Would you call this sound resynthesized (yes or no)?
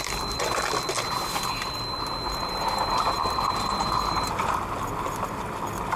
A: yes